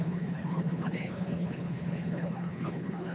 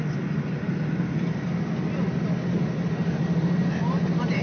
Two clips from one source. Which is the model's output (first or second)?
first